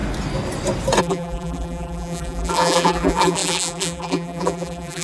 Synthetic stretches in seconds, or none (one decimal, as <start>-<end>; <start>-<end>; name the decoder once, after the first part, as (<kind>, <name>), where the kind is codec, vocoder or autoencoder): 1.0-5.0 (vocoder, BigVGAN v2)